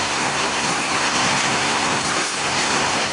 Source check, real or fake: fake